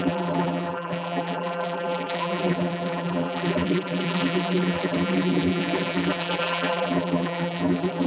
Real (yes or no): no